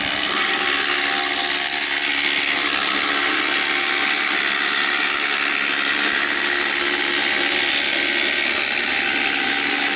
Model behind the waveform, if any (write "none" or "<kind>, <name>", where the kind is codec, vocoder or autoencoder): none